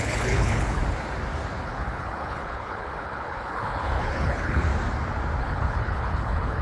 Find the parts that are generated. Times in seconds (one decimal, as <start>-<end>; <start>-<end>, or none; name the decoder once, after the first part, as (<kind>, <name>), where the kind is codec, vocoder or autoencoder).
0.0-0.8 (codec, HILCodec); 1.6-4.7; 5.4-6.6

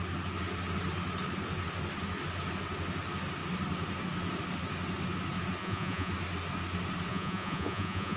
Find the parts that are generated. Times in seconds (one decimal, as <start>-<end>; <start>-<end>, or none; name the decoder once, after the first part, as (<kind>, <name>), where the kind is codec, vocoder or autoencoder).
5.6-6.1 (vocoder, Vocos); 7.1-8.2

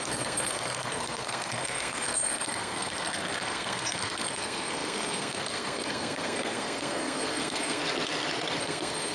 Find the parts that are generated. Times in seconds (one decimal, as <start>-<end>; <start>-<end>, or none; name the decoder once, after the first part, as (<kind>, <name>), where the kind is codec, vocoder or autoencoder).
0.0-7.8 (codec, SNAC); 8.6-9.1

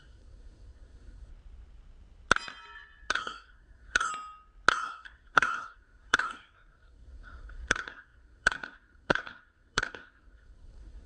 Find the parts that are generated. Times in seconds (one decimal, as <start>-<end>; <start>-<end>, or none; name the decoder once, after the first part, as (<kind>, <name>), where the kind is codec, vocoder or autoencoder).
0.0-1.3 (codec, SNAC); 3.1-4.1; 4.7-11.1

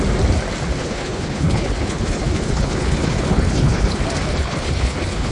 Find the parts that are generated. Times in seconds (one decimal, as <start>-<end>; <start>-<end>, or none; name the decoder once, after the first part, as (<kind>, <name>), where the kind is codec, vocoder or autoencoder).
0.8-4.0 (codec, HILCodec); 4.4-5.3

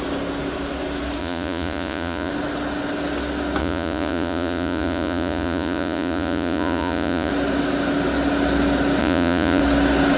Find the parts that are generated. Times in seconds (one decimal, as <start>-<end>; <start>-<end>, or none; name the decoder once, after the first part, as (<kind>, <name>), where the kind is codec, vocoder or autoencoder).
1.2-2.3 (vocoder, Vocos); 3.6-7.3; 9.0-9.6

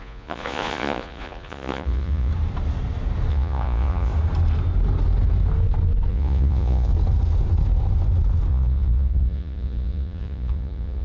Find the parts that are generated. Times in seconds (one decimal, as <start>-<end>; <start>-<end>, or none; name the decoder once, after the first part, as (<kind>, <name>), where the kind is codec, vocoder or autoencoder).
0.0-2.3 (vocoder, Vocos); 3.3-4.1; 6.1-6.9; 8.5-11.0